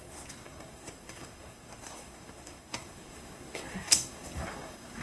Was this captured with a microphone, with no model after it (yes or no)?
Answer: no